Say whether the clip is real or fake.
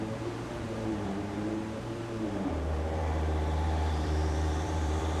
fake